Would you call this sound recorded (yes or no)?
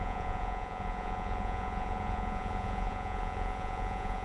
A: no